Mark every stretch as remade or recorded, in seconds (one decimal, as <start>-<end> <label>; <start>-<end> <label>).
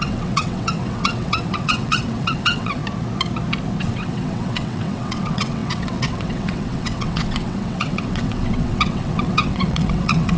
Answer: 0.0-2.8 remade; 2.8-3.8 recorded; 3.8-10.4 remade